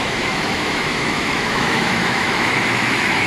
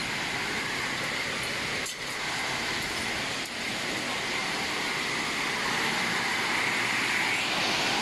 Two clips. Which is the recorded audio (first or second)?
second